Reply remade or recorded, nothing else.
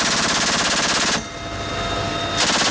recorded